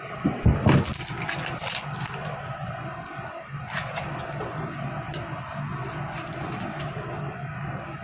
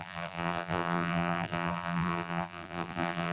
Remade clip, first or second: second